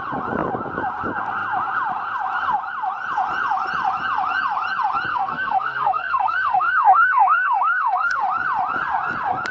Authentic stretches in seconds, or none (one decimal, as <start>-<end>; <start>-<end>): 0.0-5.1; 8.2-9.5